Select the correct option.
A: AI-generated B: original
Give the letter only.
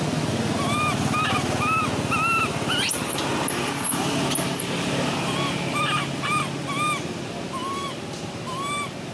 B